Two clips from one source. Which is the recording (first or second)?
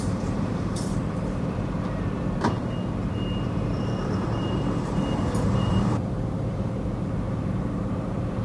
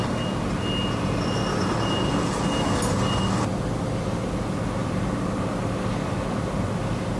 second